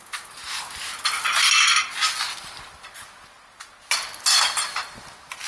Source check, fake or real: real